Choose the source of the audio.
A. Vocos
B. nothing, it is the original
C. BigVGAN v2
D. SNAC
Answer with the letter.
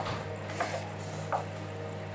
B